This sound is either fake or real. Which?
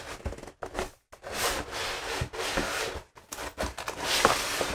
real